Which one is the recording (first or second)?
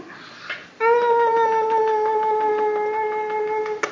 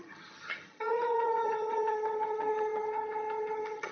first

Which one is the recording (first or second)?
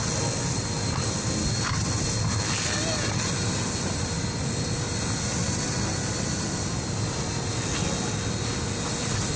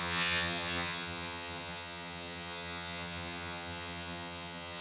first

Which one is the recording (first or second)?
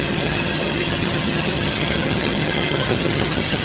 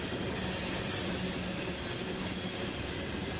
second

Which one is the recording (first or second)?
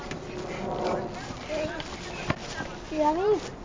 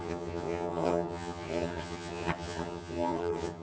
first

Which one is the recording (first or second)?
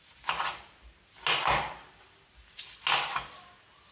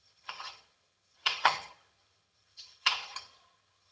first